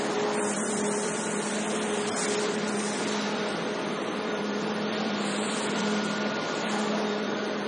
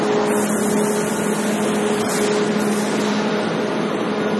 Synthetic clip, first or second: first